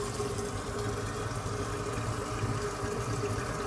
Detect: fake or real real